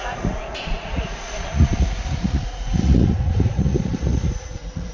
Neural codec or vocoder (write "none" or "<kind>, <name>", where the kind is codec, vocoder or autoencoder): vocoder, Vocos